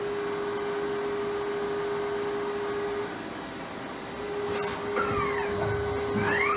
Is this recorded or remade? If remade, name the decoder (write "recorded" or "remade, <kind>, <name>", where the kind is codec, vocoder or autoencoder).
recorded